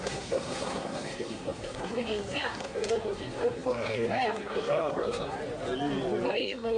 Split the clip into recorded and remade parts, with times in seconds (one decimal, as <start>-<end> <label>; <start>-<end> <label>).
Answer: 0.0-5.4 remade; 5.4-6.3 recorded; 6.3-6.8 remade

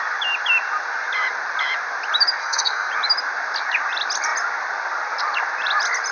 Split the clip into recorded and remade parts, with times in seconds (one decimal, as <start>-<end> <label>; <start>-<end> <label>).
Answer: 0.0-2.4 recorded; 2.4-2.9 remade; 2.9-6.1 recorded